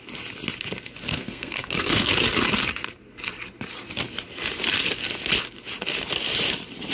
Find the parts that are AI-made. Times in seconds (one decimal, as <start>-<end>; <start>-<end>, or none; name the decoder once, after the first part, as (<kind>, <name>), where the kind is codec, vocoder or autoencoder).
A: 1.1-2.1 (codec, SNAC)